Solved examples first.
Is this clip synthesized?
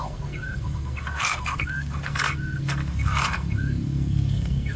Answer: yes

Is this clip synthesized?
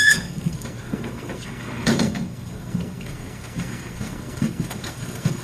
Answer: yes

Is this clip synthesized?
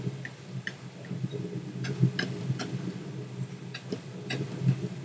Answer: no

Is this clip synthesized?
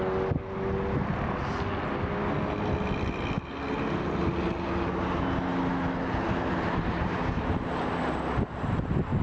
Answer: no